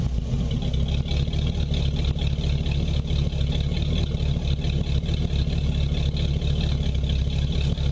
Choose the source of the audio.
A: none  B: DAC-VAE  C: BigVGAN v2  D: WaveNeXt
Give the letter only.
A